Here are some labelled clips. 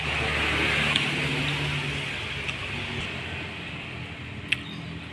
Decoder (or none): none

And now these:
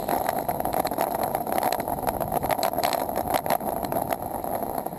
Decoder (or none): none